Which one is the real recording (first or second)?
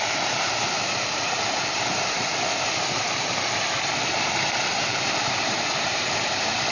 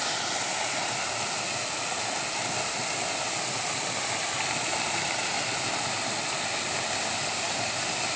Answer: second